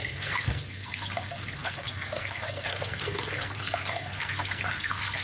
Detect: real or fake fake